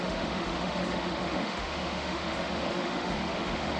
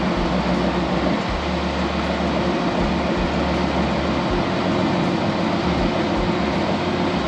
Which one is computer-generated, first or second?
first